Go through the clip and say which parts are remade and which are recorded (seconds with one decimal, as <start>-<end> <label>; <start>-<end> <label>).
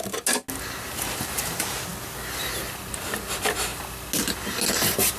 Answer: 0.0-5.2 recorded